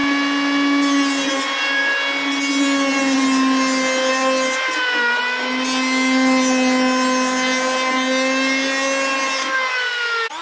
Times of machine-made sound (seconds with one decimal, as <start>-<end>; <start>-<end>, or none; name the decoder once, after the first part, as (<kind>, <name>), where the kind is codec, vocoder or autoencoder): none